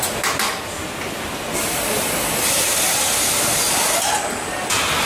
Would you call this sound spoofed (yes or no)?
no